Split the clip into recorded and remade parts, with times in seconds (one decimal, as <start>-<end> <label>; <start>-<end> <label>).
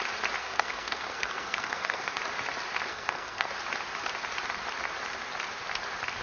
0.0-0.4 recorded; 0.4-2.2 remade; 2.2-2.9 recorded; 2.9-3.5 remade; 3.5-6.2 recorded